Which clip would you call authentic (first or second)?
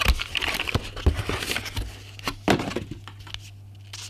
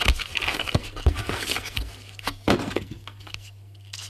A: first